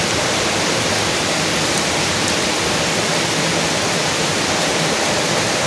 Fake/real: real